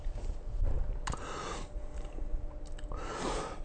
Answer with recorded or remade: recorded